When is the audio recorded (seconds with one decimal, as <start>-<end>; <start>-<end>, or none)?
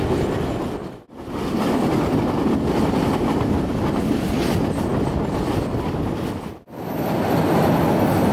0.0-8.3